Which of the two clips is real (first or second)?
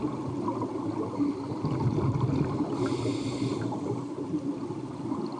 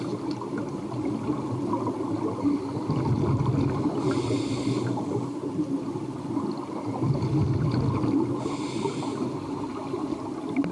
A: second